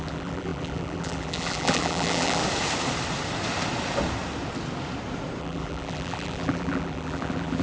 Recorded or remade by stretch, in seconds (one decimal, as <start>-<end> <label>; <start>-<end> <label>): 0.0-2.4 remade; 2.4-5.4 recorded; 5.4-7.6 remade